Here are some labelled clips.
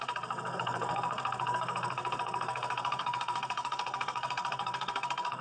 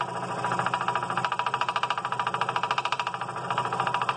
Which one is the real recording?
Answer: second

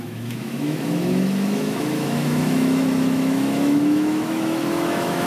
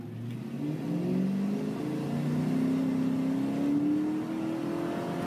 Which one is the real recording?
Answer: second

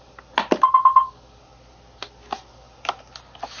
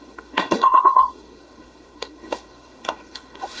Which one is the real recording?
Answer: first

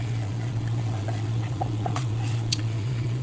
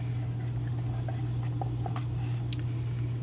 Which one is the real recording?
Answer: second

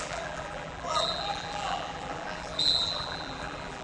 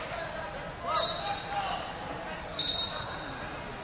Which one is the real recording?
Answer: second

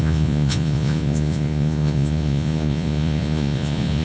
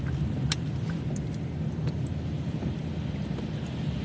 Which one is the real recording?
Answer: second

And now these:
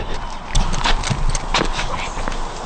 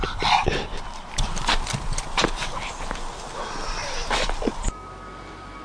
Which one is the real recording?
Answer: first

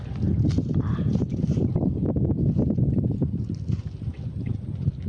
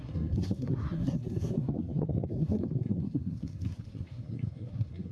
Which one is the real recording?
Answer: first